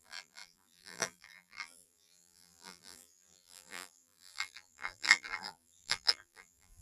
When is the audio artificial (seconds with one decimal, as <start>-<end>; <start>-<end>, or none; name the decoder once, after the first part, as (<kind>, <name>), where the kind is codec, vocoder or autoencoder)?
0.0-6.8 (vocoder, BigVGAN v2)